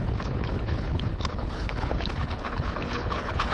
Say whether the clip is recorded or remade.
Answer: remade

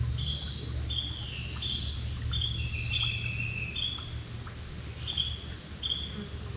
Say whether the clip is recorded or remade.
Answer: recorded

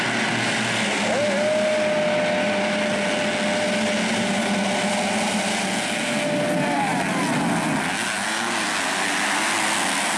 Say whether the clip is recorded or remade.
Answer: recorded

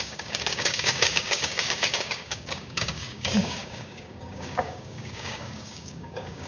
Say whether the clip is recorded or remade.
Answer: remade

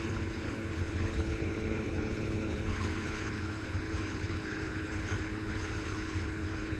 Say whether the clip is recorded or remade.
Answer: remade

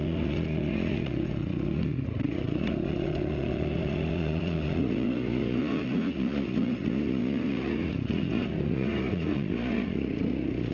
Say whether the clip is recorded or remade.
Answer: remade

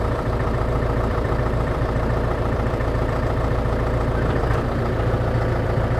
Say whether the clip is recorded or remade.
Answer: remade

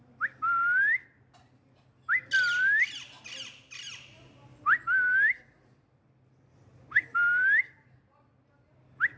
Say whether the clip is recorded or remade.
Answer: recorded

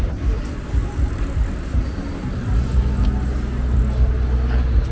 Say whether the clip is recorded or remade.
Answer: recorded